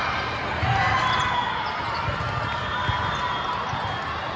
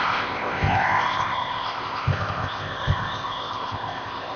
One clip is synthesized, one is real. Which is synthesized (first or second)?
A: second